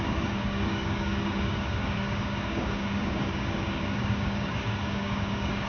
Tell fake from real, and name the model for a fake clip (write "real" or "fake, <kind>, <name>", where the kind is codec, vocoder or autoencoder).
fake, codec, DAC